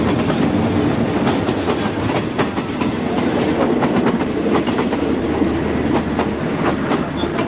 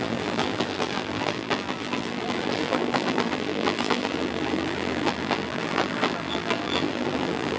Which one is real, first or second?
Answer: first